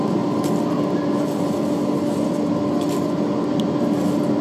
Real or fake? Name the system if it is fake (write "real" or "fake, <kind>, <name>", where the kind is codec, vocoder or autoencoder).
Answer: real